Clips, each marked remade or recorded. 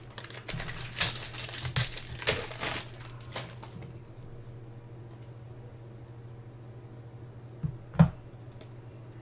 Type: recorded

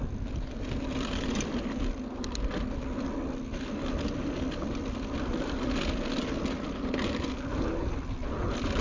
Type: recorded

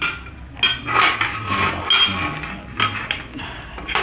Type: recorded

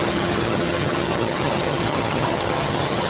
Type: remade